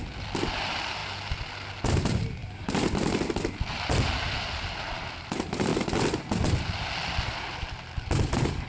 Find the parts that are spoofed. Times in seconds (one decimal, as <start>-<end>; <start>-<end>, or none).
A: none